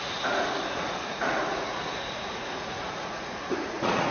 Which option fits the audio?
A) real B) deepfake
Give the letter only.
B